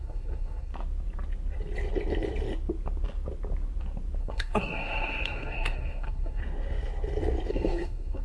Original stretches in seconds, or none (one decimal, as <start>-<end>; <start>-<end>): 0.7-4.2; 6.4-7.5